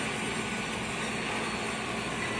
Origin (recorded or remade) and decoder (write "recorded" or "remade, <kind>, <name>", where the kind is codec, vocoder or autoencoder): recorded